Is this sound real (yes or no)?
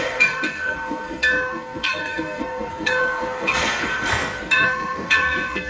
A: no